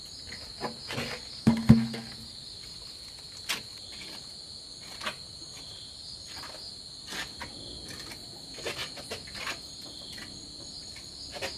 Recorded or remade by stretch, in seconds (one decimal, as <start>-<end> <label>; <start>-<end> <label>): 0.0-1.4 recorded; 1.4-2.1 remade; 2.1-11.6 recorded